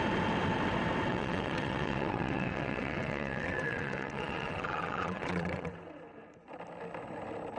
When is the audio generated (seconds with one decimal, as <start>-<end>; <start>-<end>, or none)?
1.1-5.7